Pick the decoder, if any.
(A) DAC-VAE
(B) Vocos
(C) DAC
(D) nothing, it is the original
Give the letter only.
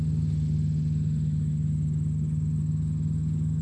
D